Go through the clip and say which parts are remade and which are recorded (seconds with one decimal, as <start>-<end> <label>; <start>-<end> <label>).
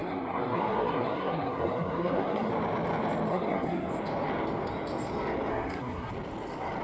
0.0-2.5 remade; 2.5-3.3 recorded; 3.3-3.9 remade; 3.9-5.5 recorded; 5.5-6.1 remade; 6.1-6.8 recorded